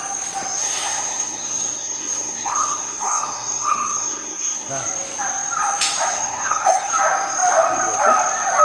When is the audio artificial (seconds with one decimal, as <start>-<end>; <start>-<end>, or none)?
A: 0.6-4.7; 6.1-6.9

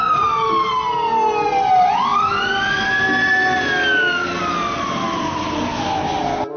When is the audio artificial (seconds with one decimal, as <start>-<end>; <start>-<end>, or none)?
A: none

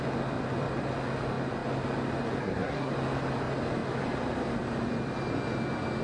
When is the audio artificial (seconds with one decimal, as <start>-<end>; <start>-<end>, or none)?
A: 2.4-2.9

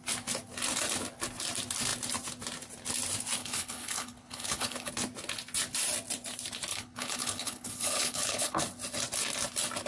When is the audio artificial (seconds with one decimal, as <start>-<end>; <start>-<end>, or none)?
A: 3.4-4.9; 6.7-8.6

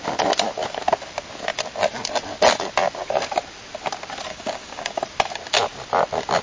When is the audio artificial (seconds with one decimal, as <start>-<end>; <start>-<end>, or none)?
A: 4.3-5.0

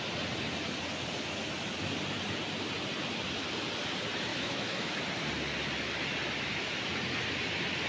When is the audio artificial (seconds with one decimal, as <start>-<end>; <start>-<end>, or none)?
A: 4.3-5.0